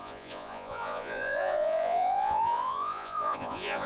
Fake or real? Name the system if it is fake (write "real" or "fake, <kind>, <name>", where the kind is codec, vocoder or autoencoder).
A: fake, vocoder, Vocos